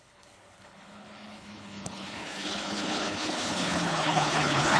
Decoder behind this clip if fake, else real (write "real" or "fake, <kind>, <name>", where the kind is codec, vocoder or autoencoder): fake, codec, HILCodec